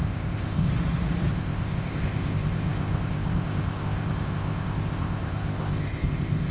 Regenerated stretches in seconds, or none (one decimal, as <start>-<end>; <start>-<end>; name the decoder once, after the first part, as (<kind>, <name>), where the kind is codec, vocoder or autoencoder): 0.0-0.7 (codec, ZipCodec); 1.3-6.5